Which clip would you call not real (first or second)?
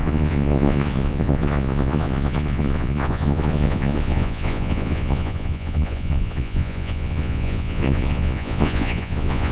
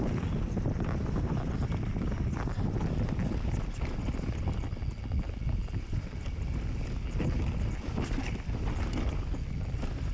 first